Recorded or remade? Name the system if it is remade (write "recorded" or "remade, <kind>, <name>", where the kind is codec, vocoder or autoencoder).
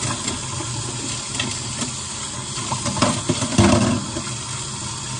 recorded